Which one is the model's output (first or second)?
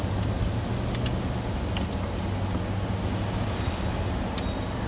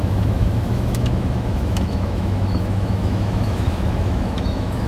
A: second